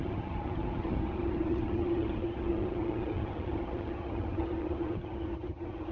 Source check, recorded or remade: remade